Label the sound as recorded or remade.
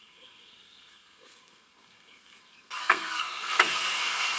remade